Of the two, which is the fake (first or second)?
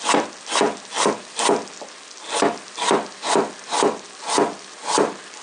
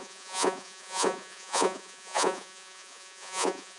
second